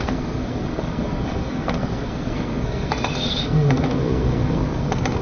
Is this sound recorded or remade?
remade